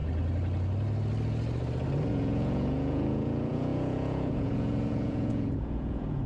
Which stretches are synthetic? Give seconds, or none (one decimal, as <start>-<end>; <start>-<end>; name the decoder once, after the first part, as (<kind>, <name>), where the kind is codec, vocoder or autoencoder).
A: 2.1-6.3 (vocoder, Vocos)